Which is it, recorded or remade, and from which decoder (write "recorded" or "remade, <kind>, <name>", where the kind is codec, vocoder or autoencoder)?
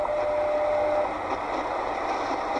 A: recorded